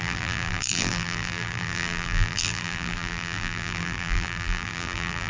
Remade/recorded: remade